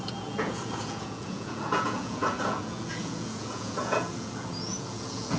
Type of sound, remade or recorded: remade